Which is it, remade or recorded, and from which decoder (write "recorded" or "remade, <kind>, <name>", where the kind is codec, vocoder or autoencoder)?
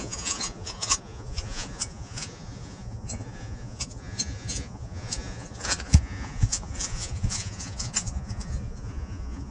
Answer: remade, vocoder, Vocos